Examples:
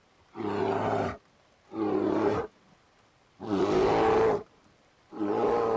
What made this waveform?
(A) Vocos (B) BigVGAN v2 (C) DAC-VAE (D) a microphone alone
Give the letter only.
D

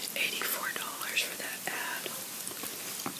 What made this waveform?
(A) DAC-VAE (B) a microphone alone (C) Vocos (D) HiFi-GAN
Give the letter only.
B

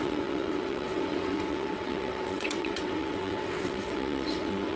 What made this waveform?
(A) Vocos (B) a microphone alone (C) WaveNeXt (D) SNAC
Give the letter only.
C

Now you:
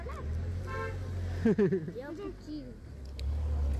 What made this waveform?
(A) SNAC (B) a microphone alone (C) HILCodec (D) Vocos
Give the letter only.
B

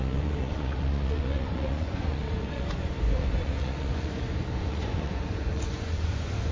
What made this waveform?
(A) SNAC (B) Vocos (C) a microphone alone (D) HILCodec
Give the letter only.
B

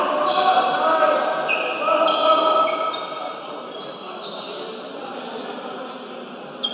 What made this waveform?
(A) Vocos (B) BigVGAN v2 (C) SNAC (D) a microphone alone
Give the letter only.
D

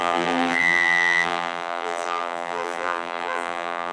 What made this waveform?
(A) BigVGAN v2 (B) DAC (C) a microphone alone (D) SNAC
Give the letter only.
A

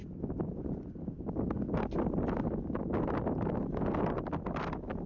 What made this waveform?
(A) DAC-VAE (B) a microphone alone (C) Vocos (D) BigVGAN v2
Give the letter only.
B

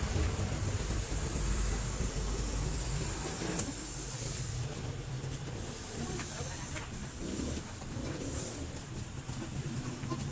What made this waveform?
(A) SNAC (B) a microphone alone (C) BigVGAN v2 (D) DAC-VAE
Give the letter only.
C